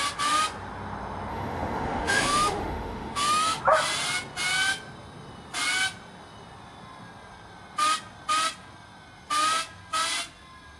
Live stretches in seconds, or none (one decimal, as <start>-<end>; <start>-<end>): 0.0-1.3; 3.6-10.8